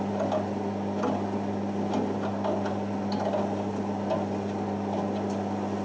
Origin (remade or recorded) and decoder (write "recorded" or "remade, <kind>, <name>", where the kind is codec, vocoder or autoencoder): recorded